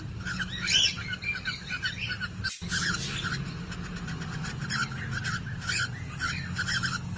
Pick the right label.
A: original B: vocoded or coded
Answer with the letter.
A